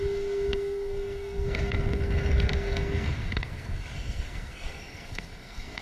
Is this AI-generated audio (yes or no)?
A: yes